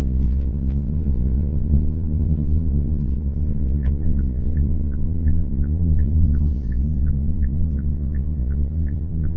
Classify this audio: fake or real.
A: fake